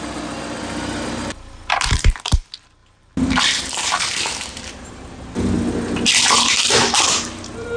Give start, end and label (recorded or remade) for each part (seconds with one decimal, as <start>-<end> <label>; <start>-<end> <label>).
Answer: 0.0-2.8 recorded; 2.8-5.5 remade; 5.5-7.8 recorded